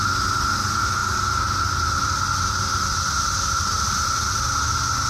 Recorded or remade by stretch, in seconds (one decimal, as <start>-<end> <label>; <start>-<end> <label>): 0.0-5.1 recorded